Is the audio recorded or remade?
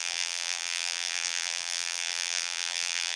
remade